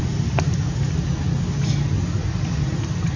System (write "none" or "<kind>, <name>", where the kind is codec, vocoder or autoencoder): none